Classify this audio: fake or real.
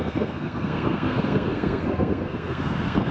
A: fake